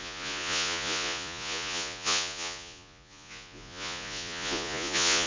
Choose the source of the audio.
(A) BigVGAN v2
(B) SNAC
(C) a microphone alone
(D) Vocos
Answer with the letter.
D